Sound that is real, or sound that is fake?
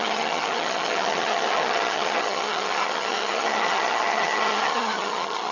fake